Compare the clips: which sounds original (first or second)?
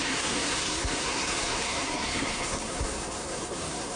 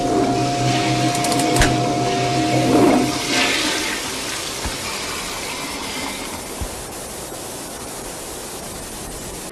second